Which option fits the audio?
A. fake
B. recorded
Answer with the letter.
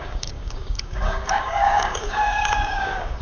A